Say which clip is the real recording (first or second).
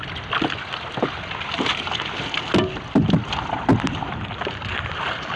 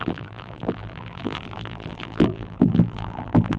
first